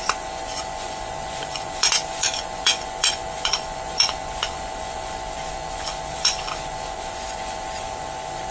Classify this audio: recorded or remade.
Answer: remade